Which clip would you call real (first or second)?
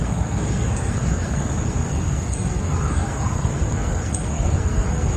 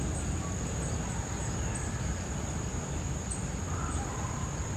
second